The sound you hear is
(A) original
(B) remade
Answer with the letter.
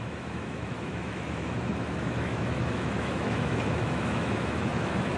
B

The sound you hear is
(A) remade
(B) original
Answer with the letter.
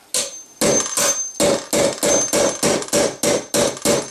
B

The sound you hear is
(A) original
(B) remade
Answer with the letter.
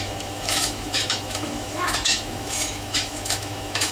B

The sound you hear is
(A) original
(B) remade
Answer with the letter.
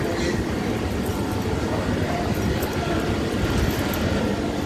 A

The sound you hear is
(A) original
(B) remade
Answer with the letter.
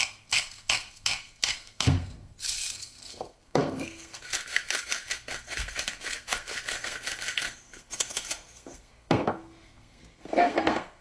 B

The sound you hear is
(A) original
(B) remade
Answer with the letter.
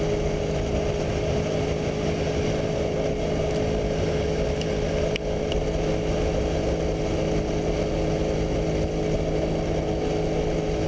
A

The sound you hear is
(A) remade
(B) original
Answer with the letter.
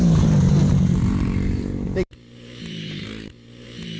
A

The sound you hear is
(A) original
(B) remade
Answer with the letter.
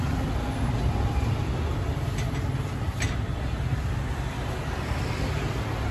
A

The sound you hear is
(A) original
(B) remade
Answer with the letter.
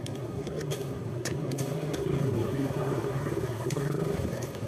B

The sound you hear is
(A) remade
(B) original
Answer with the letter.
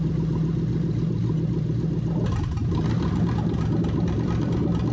B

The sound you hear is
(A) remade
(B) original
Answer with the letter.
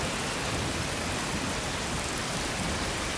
B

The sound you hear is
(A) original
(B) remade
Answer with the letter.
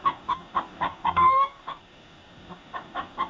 B